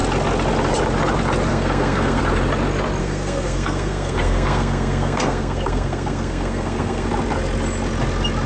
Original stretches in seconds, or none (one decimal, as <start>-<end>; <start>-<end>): 0.0-1.5; 2.2-3.0; 7.1-8.5